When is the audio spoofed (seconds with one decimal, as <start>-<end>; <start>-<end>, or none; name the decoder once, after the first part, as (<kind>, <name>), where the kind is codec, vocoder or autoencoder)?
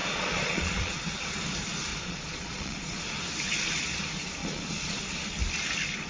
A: 0.0-1.0 (vocoder, Vocos); 1.9-3.0; 4.4-5.0